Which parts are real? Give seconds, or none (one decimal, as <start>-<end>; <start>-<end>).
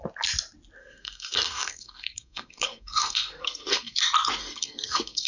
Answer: 0.0-0.8; 4.0-4.4